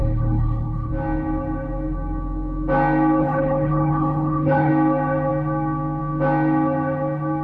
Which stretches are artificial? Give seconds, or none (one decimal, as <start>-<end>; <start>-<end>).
0.0-0.9; 3.2-4.7

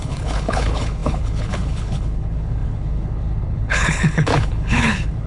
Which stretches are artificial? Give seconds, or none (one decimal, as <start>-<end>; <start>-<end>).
0.0-5.3

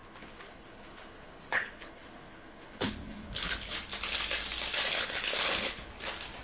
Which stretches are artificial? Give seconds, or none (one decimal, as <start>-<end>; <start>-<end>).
0.0-3.8; 4.9-5.9

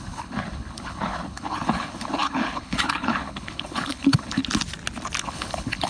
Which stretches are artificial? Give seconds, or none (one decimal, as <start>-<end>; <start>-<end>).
0.0-4.4; 5.2-5.9

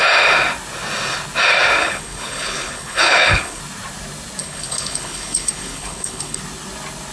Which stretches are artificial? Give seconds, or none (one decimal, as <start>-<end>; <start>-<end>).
1.8-3.6; 4.4-6.4

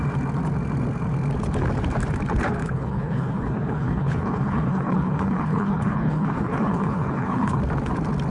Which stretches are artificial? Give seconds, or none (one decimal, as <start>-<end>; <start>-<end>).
2.6-7.6

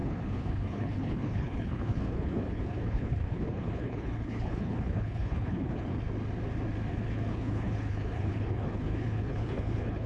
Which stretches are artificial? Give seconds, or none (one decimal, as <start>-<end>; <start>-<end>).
0.0-5.9; 6.9-10.1

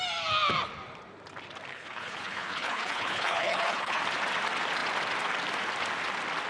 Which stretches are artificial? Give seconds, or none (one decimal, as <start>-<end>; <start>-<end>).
1.7-4.0